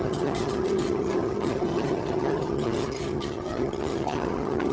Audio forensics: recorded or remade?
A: remade